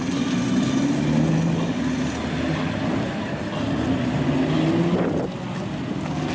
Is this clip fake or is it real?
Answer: real